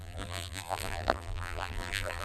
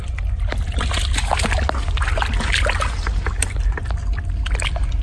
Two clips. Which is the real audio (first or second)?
second